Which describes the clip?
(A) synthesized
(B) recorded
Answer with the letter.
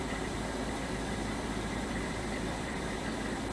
A